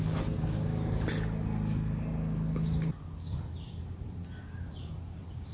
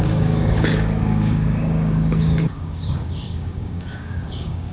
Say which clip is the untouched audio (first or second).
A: first